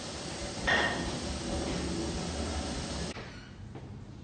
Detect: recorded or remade recorded